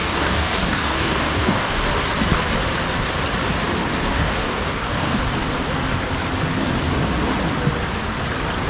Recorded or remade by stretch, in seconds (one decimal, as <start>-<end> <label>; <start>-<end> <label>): 0.0-1.7 remade; 1.7-4.1 recorded; 4.1-5.2 remade; 5.2-8.7 recorded